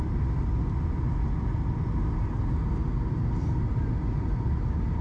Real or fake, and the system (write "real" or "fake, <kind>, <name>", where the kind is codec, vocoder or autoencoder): real